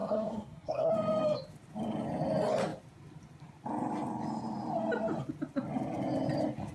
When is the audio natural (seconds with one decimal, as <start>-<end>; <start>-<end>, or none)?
0.9-6.7